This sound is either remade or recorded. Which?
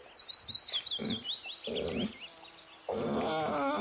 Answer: recorded